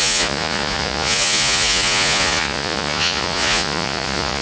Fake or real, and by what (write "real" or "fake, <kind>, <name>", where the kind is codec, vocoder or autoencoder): fake, vocoder, Vocos